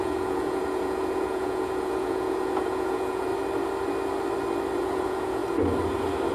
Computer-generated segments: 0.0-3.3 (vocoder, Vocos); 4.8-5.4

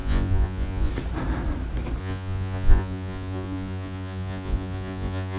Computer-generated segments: 0.0-0.9 (vocoder, Vocos); 2.0-5.4

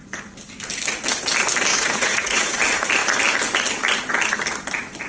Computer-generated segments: 1.7-2.6 (vocoder, Vocos)

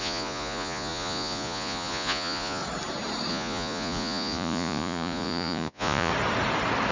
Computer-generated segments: 0.0-2.6 (vocoder, Vocos); 3.3-6.1

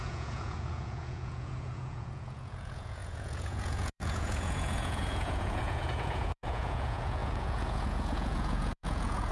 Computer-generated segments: 0.0-9.3 (vocoder, Vocos)

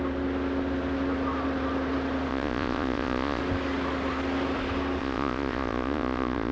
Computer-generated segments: 2.3-3.4 (vocoder, Vocos); 5.0-6.5

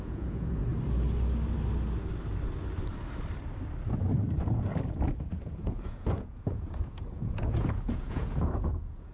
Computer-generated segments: 0.0-0.7 (vocoder, Vocos); 5.4-9.1

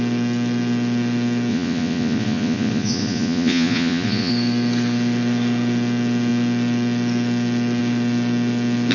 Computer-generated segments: 1.5-4.3 (vocoder, Vocos)